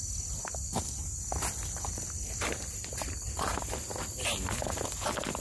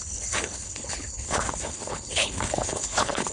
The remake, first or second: second